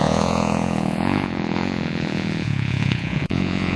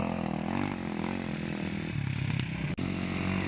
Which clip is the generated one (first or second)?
first